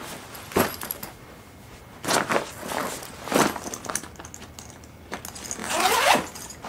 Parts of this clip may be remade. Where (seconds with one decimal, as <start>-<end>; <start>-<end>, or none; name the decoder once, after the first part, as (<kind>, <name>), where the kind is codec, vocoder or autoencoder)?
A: 5.6-6.7 (vocoder, BigVGAN v2)